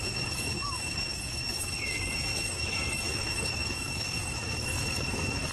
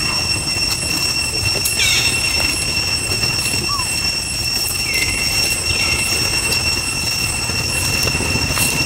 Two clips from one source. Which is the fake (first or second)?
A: first